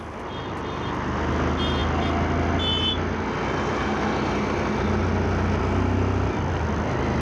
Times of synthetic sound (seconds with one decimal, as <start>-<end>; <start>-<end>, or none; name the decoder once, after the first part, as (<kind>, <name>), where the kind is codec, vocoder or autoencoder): none

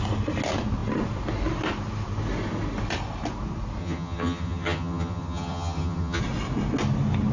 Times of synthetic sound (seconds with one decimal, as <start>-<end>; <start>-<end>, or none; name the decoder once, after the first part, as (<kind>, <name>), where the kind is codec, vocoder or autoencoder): 3.8-6.2 (vocoder, HiFi-GAN)

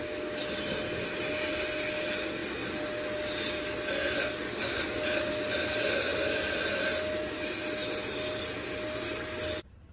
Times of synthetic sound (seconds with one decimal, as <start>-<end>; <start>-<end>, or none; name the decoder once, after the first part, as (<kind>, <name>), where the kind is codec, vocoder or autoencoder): none

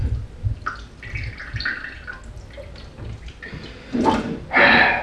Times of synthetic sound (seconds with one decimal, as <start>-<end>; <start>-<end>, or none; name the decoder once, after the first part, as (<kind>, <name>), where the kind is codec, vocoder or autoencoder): none